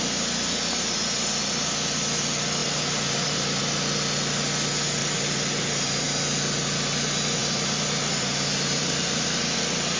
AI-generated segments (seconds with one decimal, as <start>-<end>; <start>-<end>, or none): 2.6-3.6; 5.0-6.0; 7.4-9.6